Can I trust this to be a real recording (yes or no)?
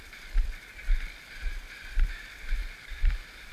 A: no